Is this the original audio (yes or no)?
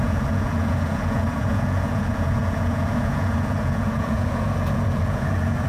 no